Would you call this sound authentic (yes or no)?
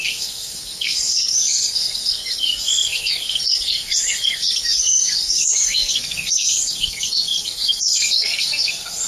no